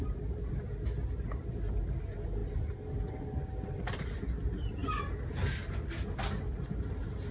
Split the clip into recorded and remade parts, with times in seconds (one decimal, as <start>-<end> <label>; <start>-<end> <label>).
0.0-7.3 recorded

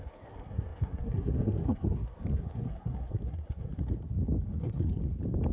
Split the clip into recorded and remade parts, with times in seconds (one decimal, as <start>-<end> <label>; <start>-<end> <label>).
0.0-3.7 remade; 3.7-4.5 recorded; 4.5-5.0 remade; 5.0-5.5 recorded